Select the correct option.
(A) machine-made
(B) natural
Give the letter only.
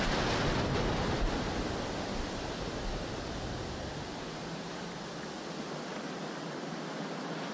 B